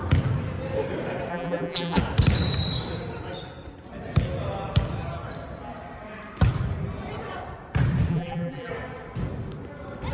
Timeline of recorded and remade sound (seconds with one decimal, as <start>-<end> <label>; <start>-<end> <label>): 0.0-1.3 recorded; 1.3-2.0 remade; 2.0-8.1 recorded; 8.1-8.7 remade; 8.7-10.1 recorded